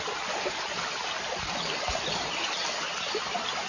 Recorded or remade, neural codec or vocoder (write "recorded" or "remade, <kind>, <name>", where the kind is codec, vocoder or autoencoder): recorded